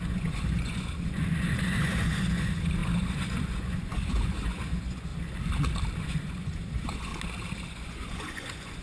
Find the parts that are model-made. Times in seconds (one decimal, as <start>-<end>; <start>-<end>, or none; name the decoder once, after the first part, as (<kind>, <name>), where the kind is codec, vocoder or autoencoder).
0.0-5.1 (vocoder, Vocos); 6.0-7.1; 7.7-8.8